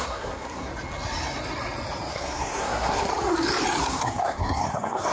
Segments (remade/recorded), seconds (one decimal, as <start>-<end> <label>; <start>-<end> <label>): 0.0-0.7 remade; 0.7-2.1 recorded; 2.1-3.1 remade; 3.1-3.8 recorded; 3.8-5.1 remade